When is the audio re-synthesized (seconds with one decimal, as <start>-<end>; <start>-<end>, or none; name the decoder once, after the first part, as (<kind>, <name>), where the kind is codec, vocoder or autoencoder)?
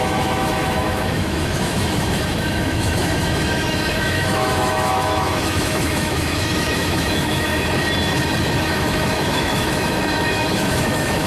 0.0-7.5 (autoencoder, DAC-VAE); 8.6-11.3